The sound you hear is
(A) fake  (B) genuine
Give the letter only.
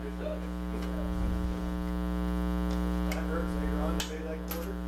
B